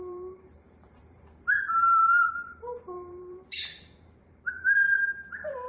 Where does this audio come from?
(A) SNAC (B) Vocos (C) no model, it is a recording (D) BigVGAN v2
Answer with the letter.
D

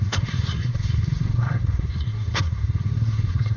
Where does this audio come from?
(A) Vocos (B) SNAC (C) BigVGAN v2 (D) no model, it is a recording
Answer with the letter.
B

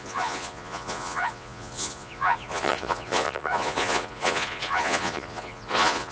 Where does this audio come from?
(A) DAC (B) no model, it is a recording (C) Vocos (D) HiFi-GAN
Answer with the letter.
C